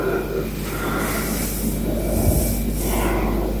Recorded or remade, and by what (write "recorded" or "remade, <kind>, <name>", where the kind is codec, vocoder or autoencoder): recorded